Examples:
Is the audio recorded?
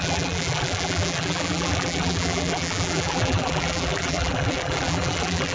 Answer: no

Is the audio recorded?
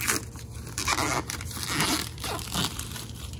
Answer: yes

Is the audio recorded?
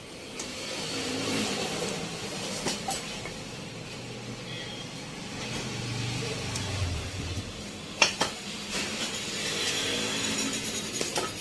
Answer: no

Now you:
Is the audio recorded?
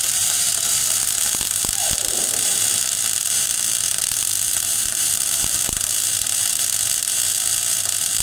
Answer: no